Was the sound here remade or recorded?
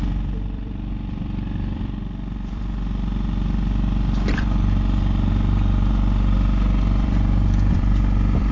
remade